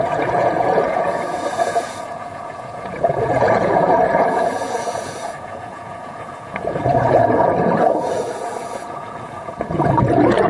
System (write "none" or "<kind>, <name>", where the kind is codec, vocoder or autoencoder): vocoder, Vocos